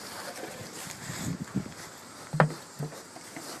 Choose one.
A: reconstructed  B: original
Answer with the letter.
B